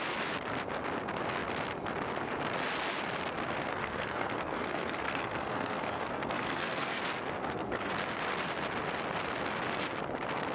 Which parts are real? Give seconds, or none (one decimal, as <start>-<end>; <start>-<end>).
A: 0.0-3.7; 7.0-7.4; 7.9-10.5